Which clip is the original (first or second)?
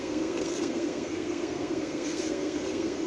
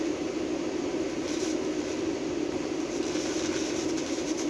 second